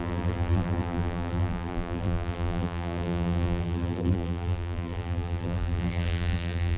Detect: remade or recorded remade